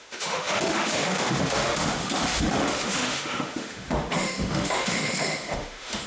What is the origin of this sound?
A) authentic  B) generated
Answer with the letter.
B